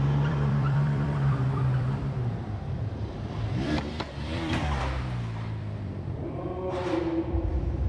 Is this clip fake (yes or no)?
yes